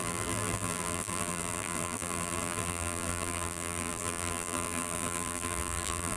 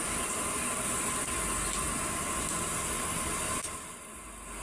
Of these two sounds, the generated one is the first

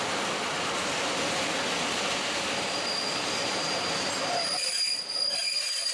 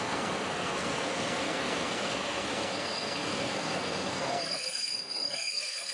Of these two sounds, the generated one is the second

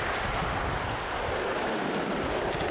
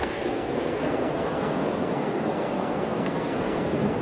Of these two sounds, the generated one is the second